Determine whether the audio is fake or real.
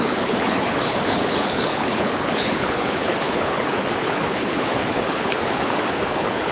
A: fake